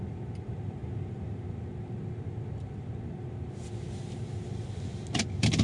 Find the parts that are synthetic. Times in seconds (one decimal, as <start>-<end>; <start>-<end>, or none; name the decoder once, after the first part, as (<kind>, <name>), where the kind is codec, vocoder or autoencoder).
none